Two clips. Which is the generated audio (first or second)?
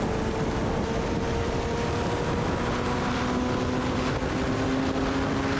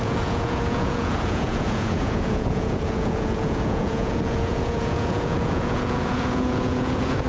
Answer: second